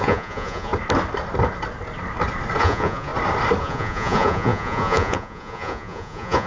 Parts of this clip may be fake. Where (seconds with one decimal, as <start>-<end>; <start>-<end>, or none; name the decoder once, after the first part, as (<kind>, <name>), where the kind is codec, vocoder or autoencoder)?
0.0-0.7 (vocoder, Vocos); 2.6-3.1; 3.6-6.5

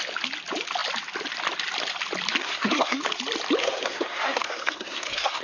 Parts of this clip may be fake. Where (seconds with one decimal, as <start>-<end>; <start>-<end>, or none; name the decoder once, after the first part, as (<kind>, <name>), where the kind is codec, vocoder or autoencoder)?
2.4-3.0 (codec, SNAC); 3.6-5.4

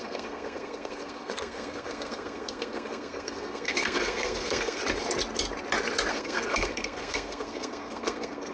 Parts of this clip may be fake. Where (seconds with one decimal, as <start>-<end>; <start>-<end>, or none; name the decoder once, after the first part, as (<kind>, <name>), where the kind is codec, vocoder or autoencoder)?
0.0-4.8 (codec, SNAC); 6.1-8.5

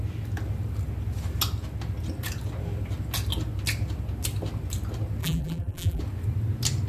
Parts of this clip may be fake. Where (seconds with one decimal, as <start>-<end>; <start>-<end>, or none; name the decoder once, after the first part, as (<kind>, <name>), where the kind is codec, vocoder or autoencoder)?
5.2-6.0 (vocoder, BigVGAN v2)